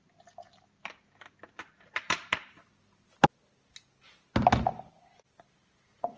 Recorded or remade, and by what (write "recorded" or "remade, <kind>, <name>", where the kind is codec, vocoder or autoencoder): recorded